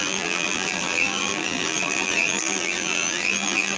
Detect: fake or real fake